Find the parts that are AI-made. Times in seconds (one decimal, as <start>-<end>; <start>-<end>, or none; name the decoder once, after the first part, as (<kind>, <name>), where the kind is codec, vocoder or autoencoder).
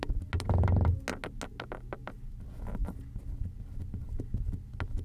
none